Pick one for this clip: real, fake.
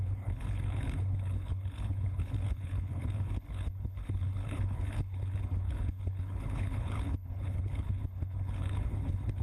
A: fake